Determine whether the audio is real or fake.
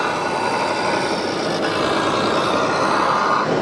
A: real